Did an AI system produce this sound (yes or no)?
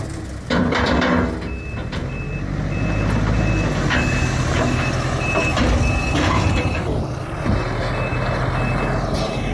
no